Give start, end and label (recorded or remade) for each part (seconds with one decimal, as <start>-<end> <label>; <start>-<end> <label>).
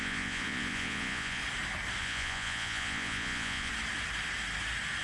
0.0-1.4 remade; 1.4-2.0 recorded; 2.0-3.7 remade; 3.7-5.0 recorded